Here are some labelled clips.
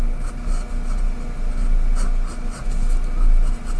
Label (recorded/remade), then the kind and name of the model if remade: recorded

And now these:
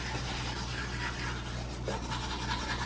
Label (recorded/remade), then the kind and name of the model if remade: recorded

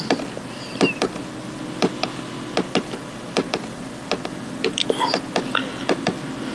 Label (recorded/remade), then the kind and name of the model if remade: recorded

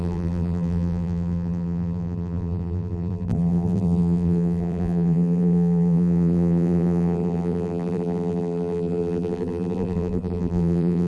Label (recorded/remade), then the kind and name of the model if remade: remade, vocoder, BigVGAN v2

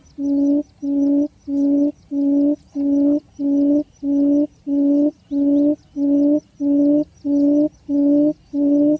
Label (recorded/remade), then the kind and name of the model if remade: recorded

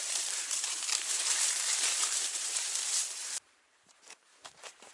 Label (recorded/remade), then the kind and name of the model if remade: remade, vocoder, BigVGAN v2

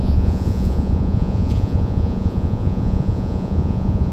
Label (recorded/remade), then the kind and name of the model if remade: remade, vocoder, Vocos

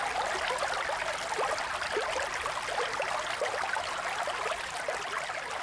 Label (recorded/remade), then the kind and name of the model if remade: recorded